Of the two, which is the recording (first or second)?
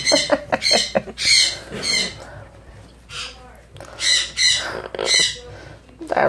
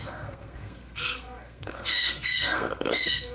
first